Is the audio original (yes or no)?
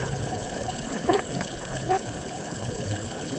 no